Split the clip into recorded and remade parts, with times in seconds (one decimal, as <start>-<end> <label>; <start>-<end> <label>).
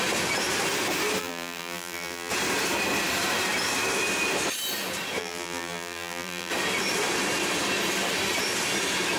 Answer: 0.0-1.2 recorded; 1.2-2.3 remade; 2.3-5.2 recorded; 5.2-6.5 remade; 6.5-9.2 recorded